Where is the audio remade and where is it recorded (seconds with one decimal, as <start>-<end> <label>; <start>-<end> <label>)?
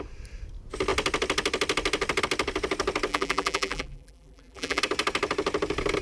0.0-3.1 recorded; 3.1-4.8 remade; 4.8-6.0 recorded